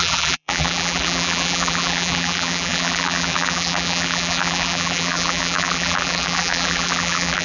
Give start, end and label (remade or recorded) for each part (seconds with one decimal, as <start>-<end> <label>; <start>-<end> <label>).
0.0-7.4 remade